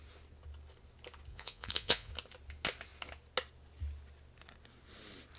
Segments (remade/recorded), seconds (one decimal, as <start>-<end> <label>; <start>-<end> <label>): 0.0-1.3 recorded; 1.3-2.1 remade; 2.1-5.4 recorded